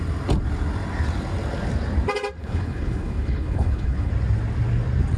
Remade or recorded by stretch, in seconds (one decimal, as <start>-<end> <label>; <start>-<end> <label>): 0.0-2.4 recorded; 2.4-4.1 remade; 4.1-5.2 recorded